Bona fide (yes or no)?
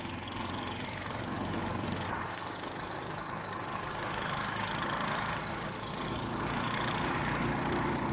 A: no